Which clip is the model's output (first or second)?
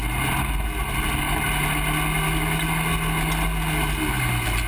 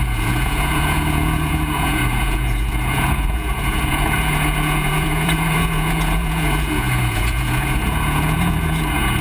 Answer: second